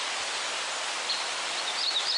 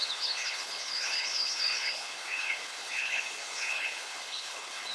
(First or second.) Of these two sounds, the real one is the first